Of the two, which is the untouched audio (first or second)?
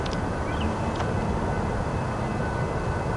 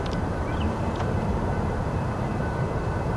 first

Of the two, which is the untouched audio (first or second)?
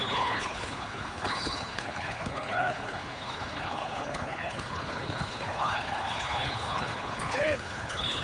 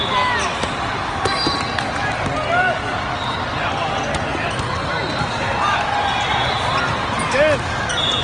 second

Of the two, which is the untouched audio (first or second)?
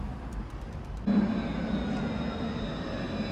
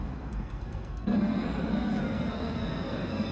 first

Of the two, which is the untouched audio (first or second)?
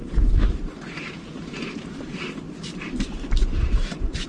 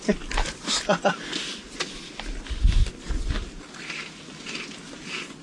second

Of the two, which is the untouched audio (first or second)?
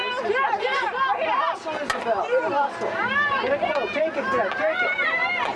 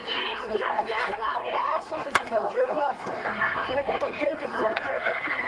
first